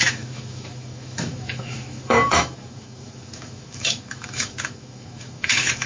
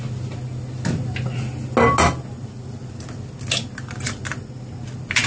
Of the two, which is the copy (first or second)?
first